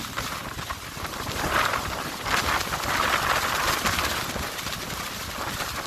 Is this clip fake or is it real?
real